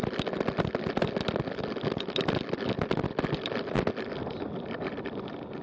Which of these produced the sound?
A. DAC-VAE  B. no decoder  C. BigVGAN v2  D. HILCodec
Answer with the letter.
B